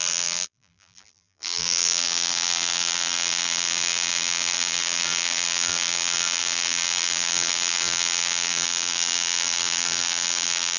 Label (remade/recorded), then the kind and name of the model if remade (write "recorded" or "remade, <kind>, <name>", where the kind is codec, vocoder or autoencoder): remade, vocoder, BigVGAN v2